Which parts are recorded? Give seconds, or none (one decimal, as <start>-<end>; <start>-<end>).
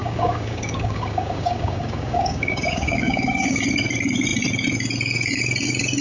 3.6-6.0